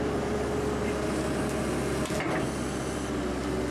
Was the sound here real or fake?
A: real